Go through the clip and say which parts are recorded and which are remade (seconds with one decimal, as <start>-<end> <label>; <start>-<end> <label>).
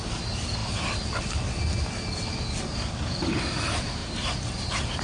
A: 0.0-0.6 remade; 0.6-2.8 recorded; 2.8-4.0 remade; 4.0-4.5 recorded; 4.5-5.0 remade